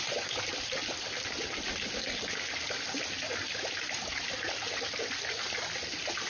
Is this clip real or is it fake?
real